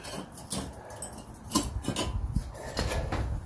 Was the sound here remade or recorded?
recorded